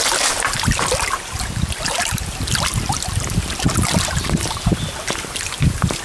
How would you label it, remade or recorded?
recorded